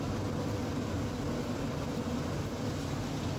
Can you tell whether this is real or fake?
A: real